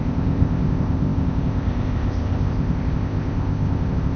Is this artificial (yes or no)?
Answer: yes